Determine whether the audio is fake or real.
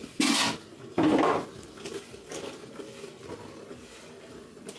real